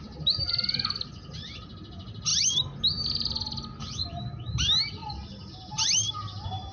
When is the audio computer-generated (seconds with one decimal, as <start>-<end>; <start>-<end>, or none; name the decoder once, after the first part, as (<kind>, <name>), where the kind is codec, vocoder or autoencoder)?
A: 2.3-2.8 (vocoder, BigVGAN v2)